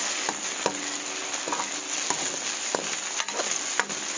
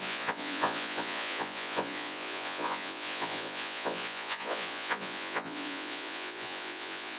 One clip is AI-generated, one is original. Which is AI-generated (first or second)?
second